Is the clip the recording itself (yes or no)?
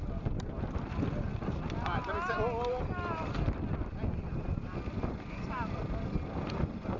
yes